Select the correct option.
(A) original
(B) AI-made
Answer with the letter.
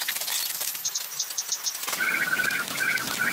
A